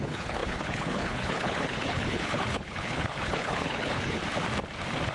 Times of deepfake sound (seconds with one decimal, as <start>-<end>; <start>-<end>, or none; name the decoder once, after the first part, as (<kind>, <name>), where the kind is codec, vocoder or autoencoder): 0.0-4.2 (codec, HILCodec)